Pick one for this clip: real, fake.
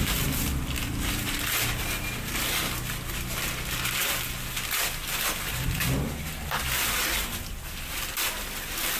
real